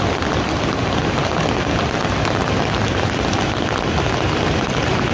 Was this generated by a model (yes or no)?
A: no